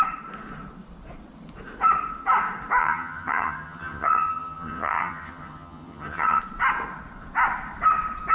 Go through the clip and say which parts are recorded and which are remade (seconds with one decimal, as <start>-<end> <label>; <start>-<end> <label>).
0.0-2.8 recorded; 2.8-6.4 remade; 6.4-8.3 recorded